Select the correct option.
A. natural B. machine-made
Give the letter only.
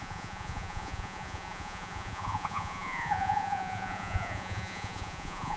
B